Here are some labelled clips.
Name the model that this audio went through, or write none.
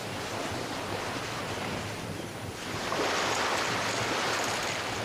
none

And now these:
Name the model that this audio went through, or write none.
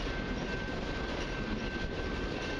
none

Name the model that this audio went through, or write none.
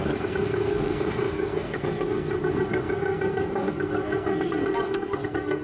codec, SNAC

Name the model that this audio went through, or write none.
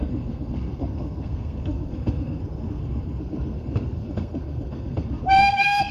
codec, SNAC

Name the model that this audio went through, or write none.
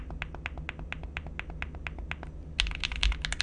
none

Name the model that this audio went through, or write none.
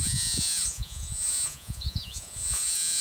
vocoder, Vocos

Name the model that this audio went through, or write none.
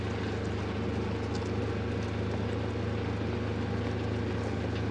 none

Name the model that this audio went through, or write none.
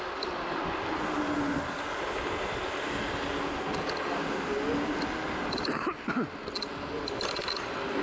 none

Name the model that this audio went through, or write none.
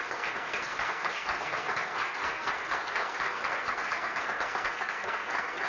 codec, SNAC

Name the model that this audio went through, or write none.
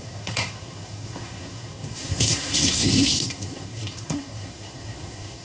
codec, SNAC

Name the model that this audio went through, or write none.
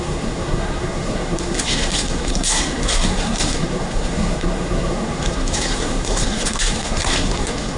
codec, SNAC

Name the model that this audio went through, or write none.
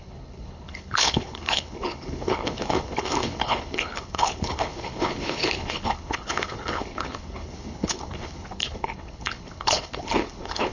codec, HILCodec